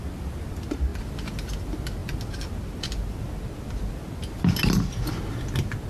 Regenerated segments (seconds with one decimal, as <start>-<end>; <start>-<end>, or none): none